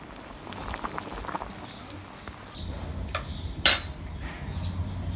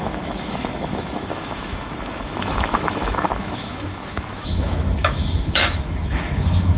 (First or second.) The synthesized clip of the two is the second